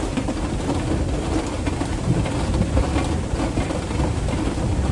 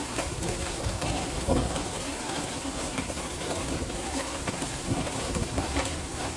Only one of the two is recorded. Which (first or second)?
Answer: first